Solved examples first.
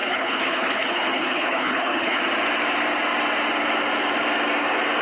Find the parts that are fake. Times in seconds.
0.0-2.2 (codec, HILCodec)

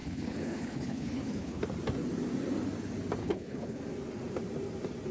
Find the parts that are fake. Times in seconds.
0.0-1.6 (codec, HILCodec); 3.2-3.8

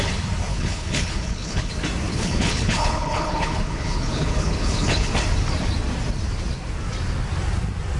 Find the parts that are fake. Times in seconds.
0.5-1.7 (codec, HILCodec); 2.1-5.1

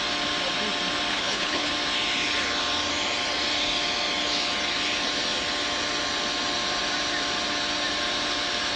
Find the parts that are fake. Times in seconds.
1.1-1.7 (codec, HILCodec)

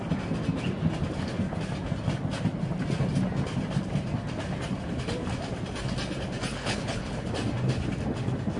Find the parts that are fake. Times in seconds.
6.5-7.3 (codec, HILCodec)

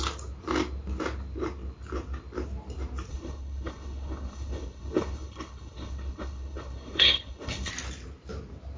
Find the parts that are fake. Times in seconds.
3.1-7.7 (codec, HILCodec)

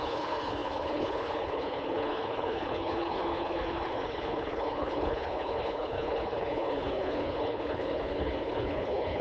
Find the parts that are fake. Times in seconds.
0.0-9.2 (codec, HILCodec)

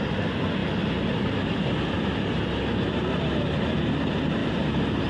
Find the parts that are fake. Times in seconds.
none